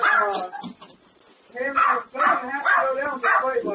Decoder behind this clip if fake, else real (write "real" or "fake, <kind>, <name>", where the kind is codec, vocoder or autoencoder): real